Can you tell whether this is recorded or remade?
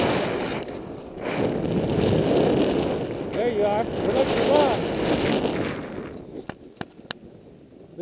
recorded